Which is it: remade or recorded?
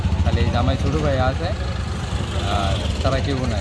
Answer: recorded